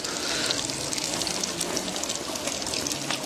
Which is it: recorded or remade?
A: recorded